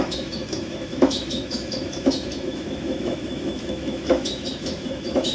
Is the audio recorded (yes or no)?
no